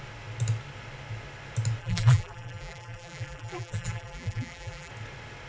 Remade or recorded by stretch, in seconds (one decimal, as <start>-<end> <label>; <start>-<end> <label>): 0.0-1.8 recorded; 1.8-4.9 remade; 4.9-5.5 recorded